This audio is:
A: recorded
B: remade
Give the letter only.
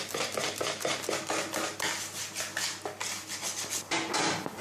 A